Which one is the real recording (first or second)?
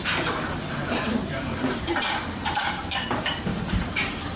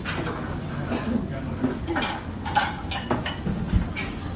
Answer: second